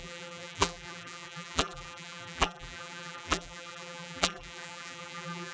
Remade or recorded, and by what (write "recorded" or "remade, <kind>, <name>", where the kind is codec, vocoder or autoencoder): remade, vocoder, BigVGAN v2